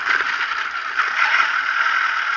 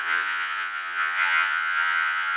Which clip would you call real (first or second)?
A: first